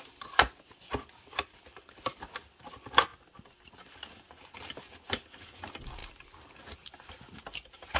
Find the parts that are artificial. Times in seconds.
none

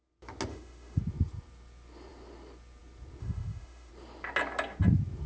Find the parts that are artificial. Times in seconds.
0.5-1.0 (autoencoder, DAC-VAE); 3.2-3.9